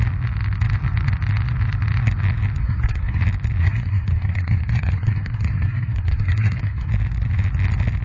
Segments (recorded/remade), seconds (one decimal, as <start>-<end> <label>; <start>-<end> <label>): 0.0-2.6 recorded; 2.6-3.2 remade; 3.2-3.6 recorded; 3.6-6.9 remade; 6.9-8.0 recorded